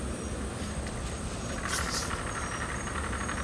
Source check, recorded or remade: recorded